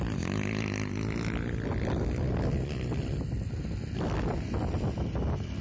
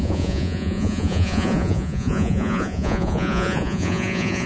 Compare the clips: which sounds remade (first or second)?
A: second